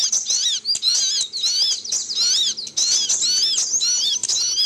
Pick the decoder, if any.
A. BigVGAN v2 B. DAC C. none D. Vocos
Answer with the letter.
C